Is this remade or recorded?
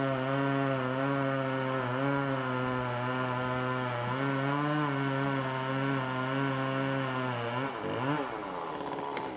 recorded